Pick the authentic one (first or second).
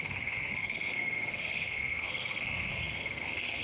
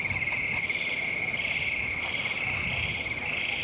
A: second